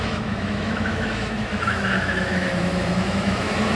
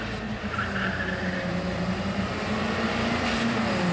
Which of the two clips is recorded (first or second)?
second